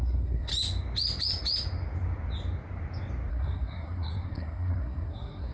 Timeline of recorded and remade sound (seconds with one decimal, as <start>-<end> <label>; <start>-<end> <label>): 0.0-0.5 remade; 0.5-3.3 recorded; 3.3-5.5 remade

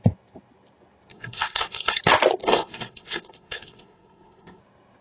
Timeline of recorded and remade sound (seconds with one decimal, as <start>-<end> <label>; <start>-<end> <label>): 0.0-1.1 recorded; 1.1-2.0 remade; 2.0-2.4 recorded; 2.4-4.6 remade; 4.6-5.0 recorded